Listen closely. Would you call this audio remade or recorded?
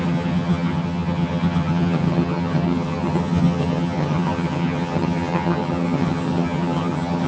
remade